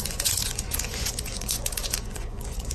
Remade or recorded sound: remade